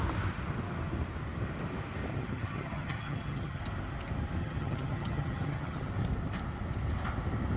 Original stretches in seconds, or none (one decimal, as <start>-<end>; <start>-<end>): 0.0-2.1; 3.6-4.4; 5.9-7.6